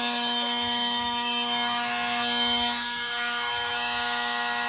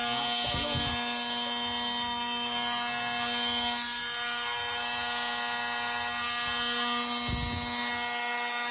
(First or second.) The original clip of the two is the second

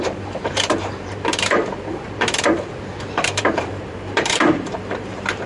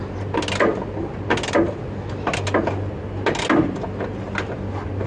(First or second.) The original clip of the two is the second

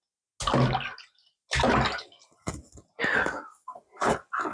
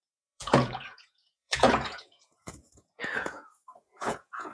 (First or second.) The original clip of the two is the first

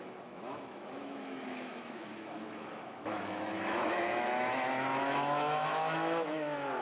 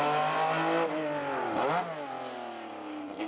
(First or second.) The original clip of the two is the second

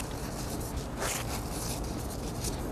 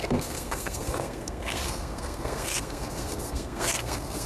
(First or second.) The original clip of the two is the first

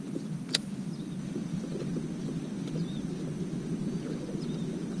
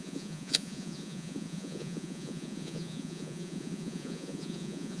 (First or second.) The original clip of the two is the first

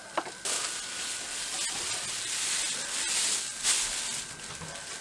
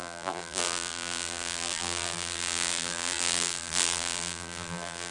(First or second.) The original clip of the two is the first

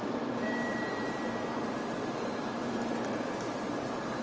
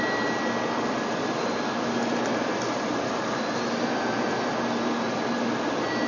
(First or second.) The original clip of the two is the second